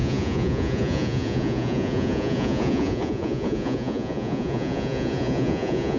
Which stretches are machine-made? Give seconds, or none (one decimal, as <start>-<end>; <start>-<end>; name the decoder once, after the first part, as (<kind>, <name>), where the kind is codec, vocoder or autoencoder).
0.0-6.0 (vocoder, Vocos)